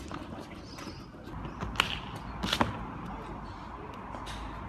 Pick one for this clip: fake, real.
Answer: real